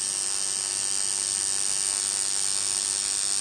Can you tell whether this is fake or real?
real